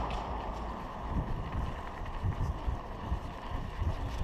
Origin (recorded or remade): recorded